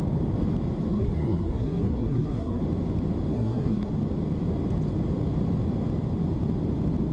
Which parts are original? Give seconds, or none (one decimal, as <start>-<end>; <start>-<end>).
0.0-0.9; 2.6-3.3; 3.9-7.1